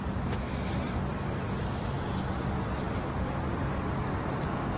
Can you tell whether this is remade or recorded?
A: recorded